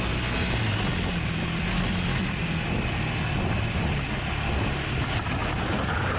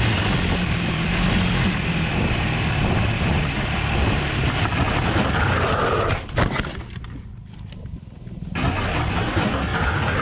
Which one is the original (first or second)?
first